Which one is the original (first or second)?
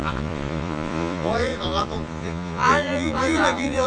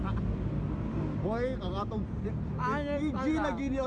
second